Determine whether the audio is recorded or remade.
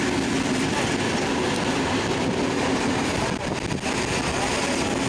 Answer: recorded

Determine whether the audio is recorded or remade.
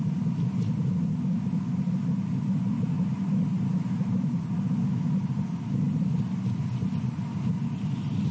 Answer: recorded